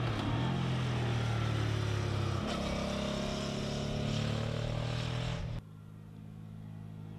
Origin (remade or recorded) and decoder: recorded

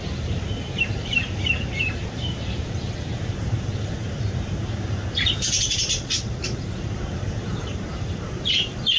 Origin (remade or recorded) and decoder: remade, vocoder, BigVGAN v2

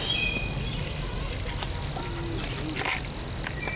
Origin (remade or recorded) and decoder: recorded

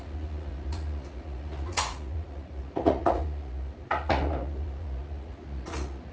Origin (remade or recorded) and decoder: remade, vocoder, Vocos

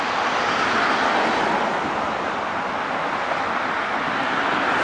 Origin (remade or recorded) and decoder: recorded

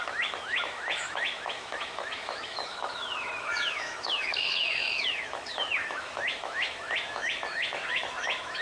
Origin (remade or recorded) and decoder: remade, autoencoder, DAC-VAE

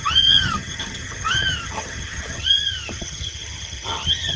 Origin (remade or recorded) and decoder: remade, vocoder, HiFi-GAN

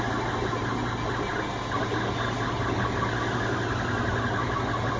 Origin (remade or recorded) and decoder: recorded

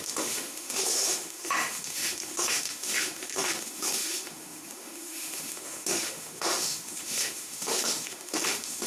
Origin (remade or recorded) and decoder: remade, autoencoder, DAC-VAE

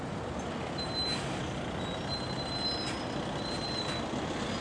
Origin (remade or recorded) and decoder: recorded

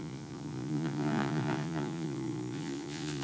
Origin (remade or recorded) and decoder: remade, vocoder, Vocos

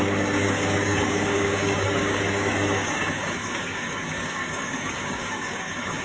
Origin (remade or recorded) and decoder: remade, codec, DAC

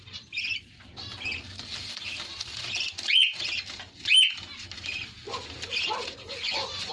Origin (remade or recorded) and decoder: recorded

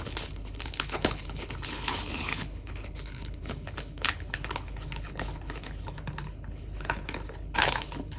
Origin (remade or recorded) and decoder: remade, codec, HILCodec